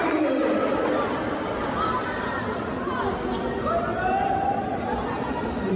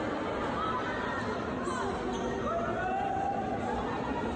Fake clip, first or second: first